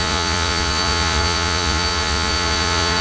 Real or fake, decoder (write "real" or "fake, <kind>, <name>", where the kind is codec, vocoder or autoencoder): fake, vocoder, Vocos